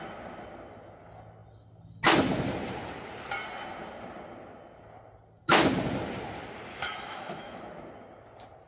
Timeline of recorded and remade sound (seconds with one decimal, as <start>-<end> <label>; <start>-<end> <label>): 0.0-6.7 recorded; 6.7-7.6 remade; 7.6-8.7 recorded